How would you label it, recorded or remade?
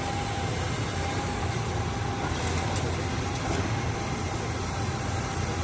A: recorded